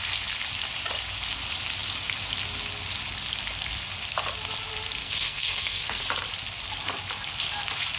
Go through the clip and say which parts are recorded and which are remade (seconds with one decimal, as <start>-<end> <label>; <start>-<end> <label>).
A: 0.0-5.0 recorded; 5.0-6.0 remade; 6.0-8.0 recorded